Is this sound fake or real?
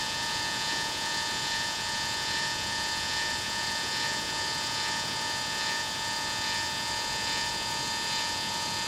fake